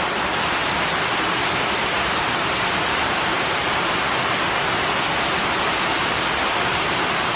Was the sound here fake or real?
real